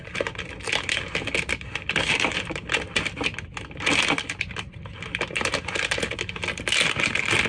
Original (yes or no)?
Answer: yes